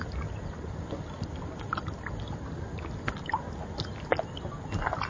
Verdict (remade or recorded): recorded